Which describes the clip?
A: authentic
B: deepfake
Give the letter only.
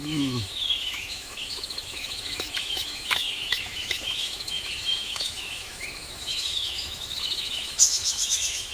B